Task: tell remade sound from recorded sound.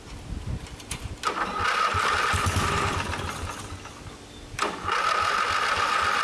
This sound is recorded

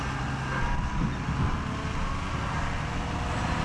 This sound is recorded